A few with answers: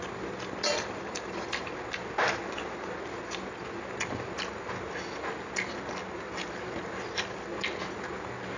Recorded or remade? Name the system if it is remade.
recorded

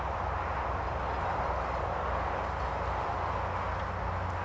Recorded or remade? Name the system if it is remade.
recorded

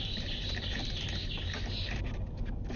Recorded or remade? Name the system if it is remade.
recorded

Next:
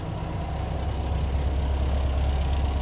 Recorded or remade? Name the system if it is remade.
recorded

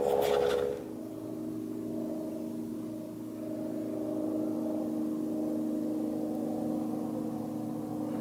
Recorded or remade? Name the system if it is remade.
recorded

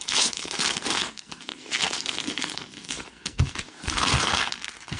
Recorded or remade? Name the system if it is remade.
remade, codec, SNAC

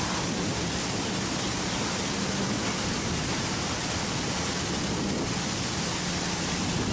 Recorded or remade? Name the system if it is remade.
recorded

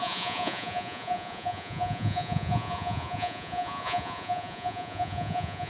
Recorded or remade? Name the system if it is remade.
remade, vocoder, Vocos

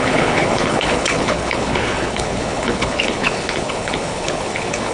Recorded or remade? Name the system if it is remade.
remade, codec, HILCodec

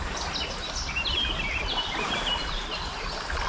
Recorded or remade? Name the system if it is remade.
recorded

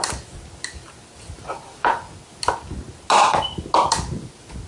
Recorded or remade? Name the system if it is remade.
recorded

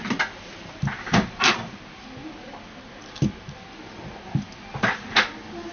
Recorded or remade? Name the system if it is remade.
recorded